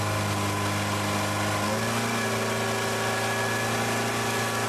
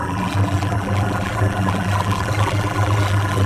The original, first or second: first